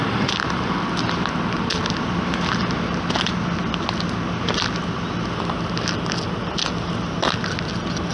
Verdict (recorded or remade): recorded